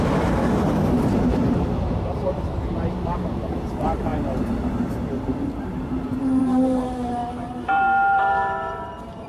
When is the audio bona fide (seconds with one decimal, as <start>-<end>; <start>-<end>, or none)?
0.4-1.0; 4.1-6.4